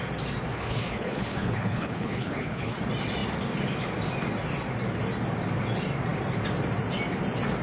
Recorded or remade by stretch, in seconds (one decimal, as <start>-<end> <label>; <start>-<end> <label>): 0.0-0.5 recorded; 0.5-2.8 remade; 2.8-7.6 recorded